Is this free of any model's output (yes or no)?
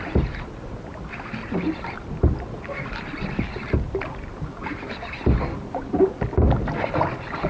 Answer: yes